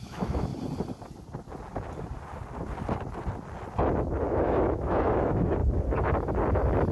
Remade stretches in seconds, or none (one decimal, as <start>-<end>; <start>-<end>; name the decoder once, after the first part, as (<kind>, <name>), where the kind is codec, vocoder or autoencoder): 0.0-0.5 (autoencoder, DAC-VAE); 4.3-5.6